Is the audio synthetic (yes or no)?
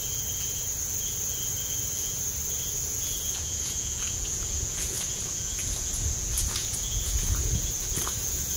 yes